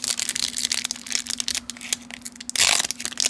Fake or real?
real